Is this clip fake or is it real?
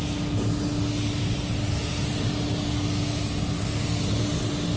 real